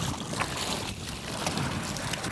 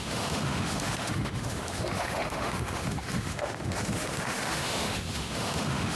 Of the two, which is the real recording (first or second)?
first